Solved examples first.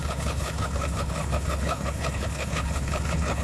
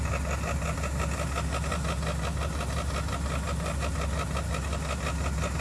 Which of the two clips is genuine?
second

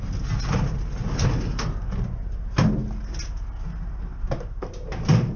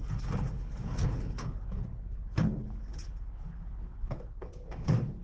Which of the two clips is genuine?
first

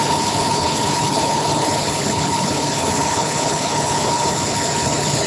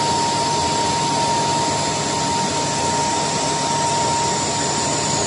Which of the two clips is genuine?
second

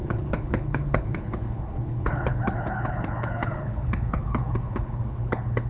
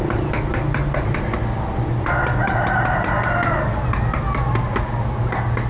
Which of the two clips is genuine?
second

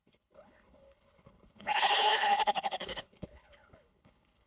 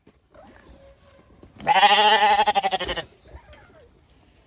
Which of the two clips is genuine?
second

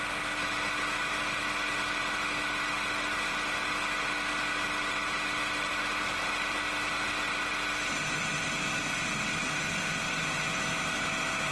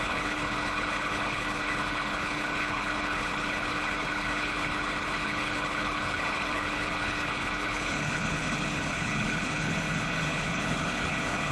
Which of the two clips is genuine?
first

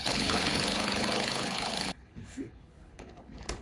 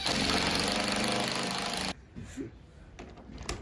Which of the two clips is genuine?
second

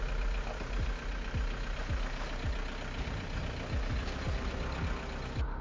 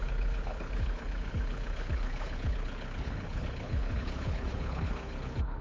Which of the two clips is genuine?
first